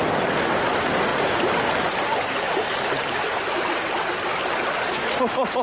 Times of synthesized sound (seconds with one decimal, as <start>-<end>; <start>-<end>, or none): 1.1-4.1